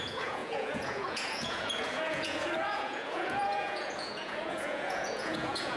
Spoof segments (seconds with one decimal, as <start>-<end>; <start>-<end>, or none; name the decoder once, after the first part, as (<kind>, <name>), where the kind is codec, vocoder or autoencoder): 0.0-5.8 (vocoder, Vocos)